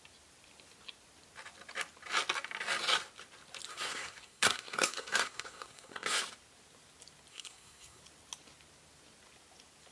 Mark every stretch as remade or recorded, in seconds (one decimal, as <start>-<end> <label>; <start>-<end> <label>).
0.0-3.7 recorded; 3.7-6.2 remade; 6.2-7.3 recorded; 7.3-8.0 remade; 8.0-9.9 recorded